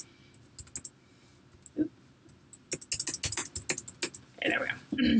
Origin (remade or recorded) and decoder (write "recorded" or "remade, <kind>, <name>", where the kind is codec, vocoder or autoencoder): recorded